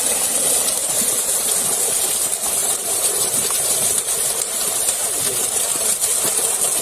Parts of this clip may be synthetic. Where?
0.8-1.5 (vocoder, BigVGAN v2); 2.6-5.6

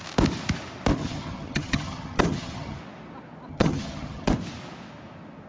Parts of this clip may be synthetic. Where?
1.0-2.8 (vocoder, HiFi-GAN); 3.5-4.3

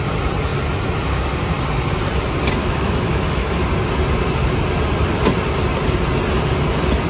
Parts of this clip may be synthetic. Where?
2.6-3.6 (autoencoder, DAC-VAE)